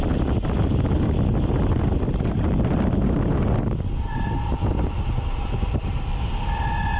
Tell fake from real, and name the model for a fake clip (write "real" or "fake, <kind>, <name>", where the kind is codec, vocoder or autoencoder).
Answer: real